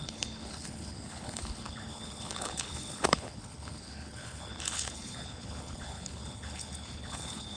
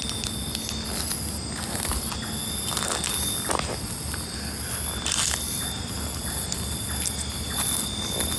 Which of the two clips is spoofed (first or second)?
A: first